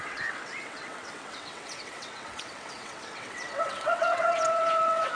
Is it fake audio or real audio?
fake